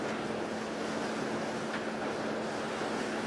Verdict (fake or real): real